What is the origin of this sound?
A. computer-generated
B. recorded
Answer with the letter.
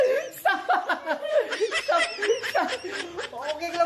A